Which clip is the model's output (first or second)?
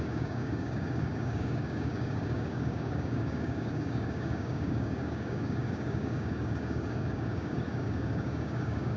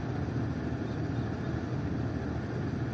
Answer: first